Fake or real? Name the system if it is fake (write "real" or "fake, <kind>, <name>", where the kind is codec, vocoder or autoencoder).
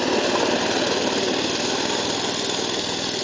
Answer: real